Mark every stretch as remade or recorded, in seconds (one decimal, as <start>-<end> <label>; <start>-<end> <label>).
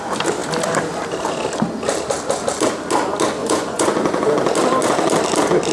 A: 0.0-3.4 recorded; 3.4-4.3 remade; 4.3-5.7 recorded